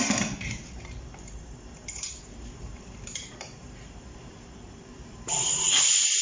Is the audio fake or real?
fake